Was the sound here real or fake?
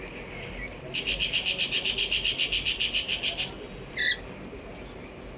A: real